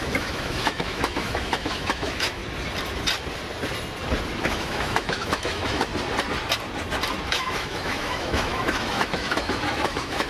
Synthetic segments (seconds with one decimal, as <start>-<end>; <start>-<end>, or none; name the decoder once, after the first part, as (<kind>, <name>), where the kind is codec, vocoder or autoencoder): 0.0-2.4 (autoencoder, DAC-VAE); 4.4-5.9; 7.3-10.3